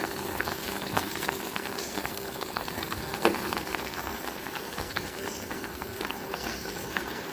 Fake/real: fake